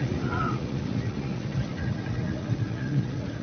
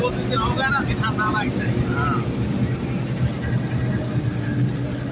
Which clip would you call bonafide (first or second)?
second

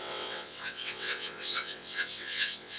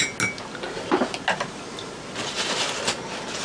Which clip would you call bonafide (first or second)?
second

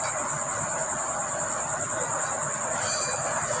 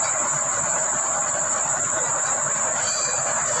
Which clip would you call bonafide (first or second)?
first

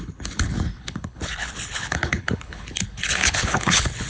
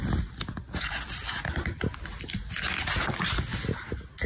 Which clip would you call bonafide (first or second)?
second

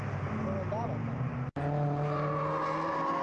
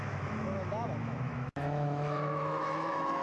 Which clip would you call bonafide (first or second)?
first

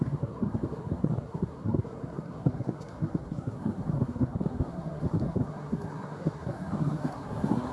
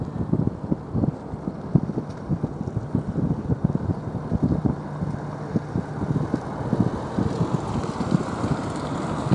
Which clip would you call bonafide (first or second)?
second